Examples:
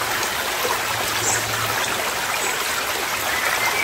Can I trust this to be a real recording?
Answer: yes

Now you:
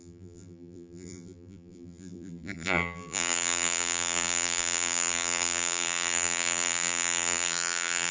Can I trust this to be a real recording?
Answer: no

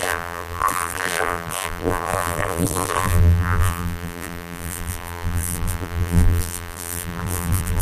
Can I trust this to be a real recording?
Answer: no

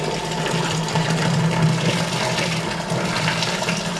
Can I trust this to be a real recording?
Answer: no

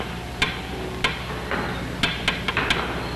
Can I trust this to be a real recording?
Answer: yes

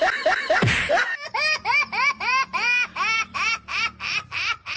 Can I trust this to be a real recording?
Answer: no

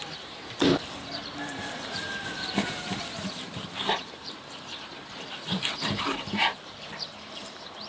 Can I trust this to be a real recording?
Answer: no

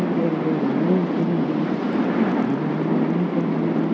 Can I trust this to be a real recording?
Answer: yes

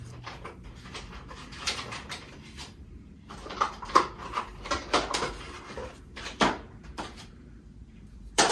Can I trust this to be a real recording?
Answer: no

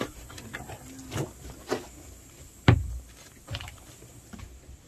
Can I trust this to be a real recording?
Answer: yes